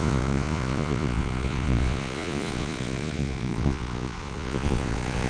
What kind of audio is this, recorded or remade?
remade